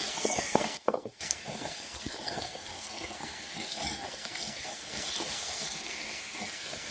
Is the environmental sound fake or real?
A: fake